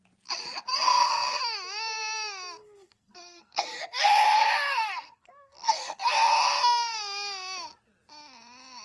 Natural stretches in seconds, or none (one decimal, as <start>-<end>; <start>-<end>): 0.0-0.7; 1.4-2.6; 6.6-8.8